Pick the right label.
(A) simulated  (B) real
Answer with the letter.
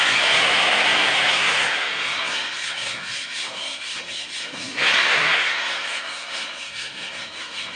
A